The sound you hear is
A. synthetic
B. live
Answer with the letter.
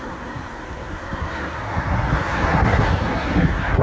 A